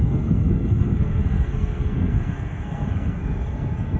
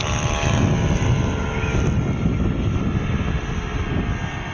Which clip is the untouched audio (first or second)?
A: second